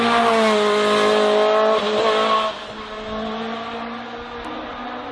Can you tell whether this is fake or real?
real